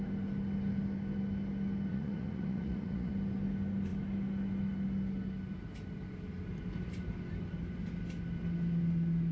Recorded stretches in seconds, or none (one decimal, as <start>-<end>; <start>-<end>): 0.0-1.9; 3.1-9.3